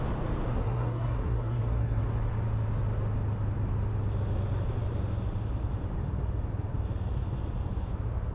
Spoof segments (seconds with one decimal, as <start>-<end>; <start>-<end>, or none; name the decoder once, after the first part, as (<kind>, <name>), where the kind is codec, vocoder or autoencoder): 0.5-2.0 (codec, SNAC)